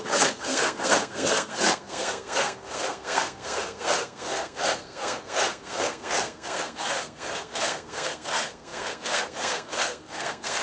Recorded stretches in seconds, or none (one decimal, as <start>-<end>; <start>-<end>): none